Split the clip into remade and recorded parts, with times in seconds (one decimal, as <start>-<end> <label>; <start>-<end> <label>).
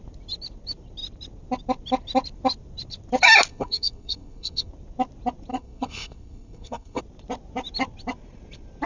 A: 0.0-3.5 recorded; 3.5-4.7 remade; 4.7-5.5 recorded; 5.5-7.0 remade; 7.0-8.9 recorded